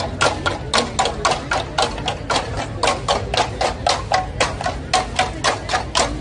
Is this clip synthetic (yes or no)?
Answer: no